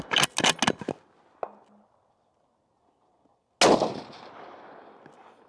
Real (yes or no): yes